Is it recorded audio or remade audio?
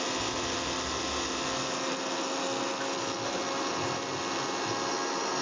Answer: recorded